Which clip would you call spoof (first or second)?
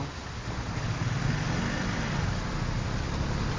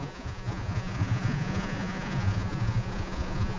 second